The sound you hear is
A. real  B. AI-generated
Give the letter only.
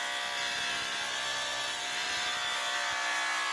A